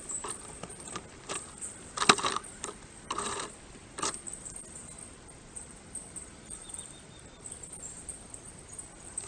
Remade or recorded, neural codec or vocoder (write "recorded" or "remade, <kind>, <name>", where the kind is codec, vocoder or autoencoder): recorded